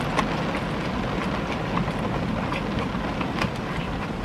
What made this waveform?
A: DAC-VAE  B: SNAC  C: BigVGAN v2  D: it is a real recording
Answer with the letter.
D